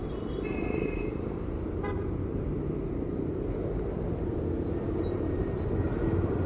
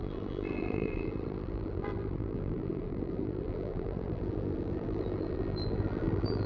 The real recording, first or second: first